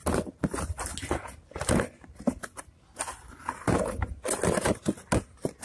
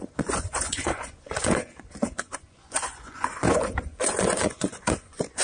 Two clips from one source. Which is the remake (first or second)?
second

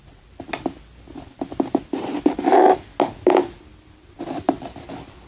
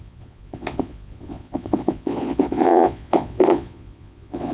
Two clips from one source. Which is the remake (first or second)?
second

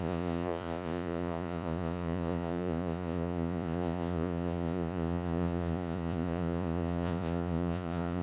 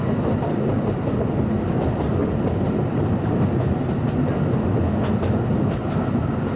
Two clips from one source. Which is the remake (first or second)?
first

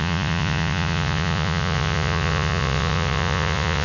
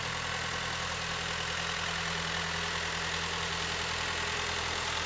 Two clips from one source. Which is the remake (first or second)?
first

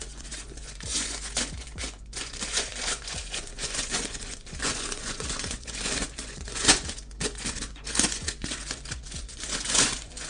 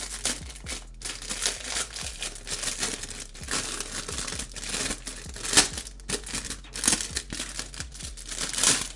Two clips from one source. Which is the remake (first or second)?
first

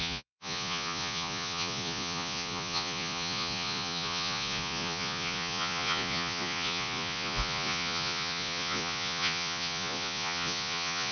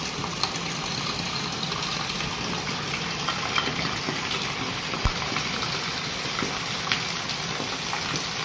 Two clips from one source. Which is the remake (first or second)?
first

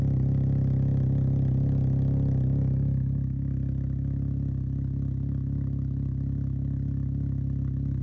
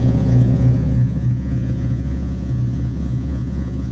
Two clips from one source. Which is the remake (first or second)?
second